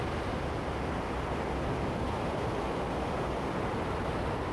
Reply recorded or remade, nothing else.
recorded